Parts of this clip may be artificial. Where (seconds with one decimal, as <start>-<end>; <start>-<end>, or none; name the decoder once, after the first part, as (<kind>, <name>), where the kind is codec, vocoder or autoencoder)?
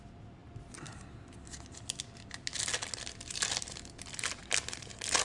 none